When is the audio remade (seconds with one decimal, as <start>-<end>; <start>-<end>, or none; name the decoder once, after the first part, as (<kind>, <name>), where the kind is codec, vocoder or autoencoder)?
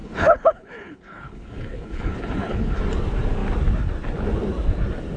0.0-2.8 (codec, HILCodec)